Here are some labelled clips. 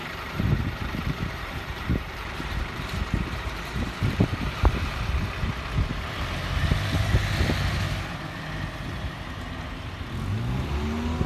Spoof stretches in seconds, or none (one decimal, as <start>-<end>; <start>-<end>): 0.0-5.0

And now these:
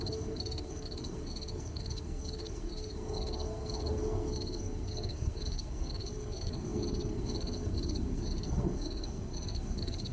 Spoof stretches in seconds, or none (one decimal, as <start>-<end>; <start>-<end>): 0.0-10.1

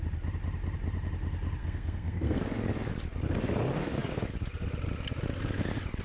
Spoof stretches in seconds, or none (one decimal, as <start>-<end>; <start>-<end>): 1.6-2.4

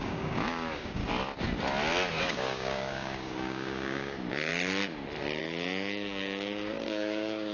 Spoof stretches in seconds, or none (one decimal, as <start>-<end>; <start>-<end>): 0.0-1.0; 2.2-4.5; 5.4-7.5

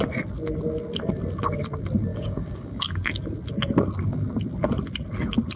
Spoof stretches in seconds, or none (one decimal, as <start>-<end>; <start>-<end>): 2.1-3.1